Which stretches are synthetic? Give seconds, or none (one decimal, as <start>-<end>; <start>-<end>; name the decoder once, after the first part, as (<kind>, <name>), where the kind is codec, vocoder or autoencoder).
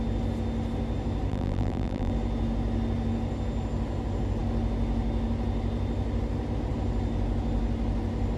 1.3-2.1 (vocoder, BigVGAN v2)